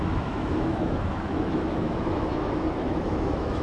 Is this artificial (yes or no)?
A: yes